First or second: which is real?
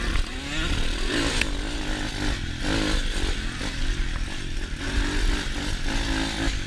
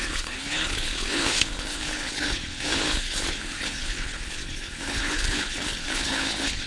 first